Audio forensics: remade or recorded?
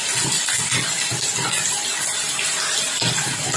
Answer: recorded